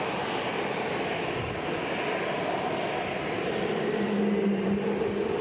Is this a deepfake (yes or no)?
no